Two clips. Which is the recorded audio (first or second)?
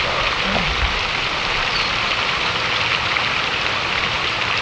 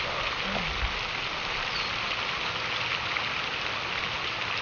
second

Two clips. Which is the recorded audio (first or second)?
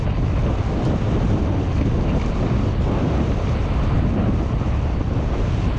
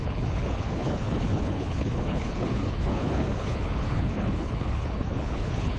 first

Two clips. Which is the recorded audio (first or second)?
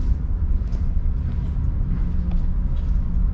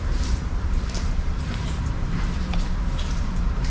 first